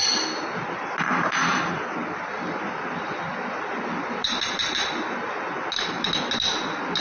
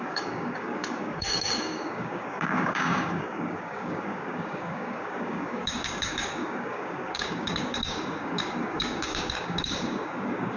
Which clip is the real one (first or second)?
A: first